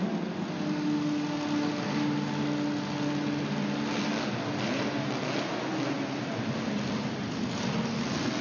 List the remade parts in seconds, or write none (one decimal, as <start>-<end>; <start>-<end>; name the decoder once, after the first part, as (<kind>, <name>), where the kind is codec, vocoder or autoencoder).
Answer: none